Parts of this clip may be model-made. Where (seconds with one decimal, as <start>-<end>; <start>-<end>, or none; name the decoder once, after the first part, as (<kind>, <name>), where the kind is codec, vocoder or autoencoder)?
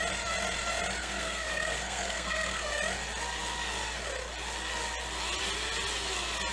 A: 1.0-2.7 (codec, SNAC)